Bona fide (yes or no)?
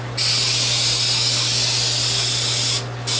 yes